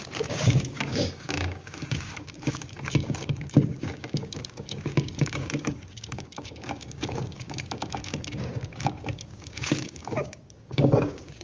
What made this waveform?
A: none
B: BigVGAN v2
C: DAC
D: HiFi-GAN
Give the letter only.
C